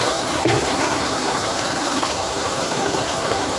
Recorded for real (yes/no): no